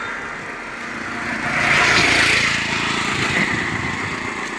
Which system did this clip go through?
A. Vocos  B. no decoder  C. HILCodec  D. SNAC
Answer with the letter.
B